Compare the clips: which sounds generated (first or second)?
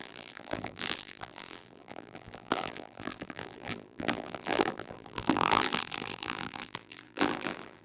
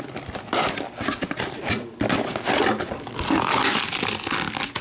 first